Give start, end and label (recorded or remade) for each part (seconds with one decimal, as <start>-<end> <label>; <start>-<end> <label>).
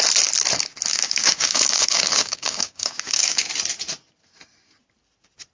0.0-0.9 recorded; 0.9-3.5 remade; 3.5-5.5 recorded